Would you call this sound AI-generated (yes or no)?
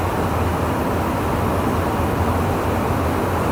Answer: no